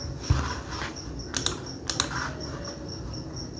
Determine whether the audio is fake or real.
real